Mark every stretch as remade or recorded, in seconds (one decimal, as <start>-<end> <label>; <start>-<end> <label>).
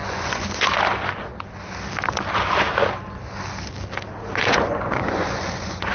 0.0-0.8 remade; 0.8-4.2 recorded; 4.2-5.9 remade